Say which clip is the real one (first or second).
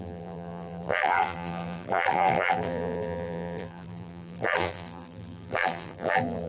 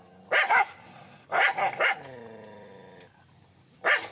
second